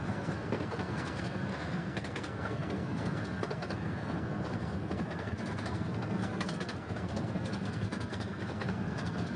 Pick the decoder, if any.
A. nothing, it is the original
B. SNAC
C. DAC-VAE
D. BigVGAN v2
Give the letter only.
B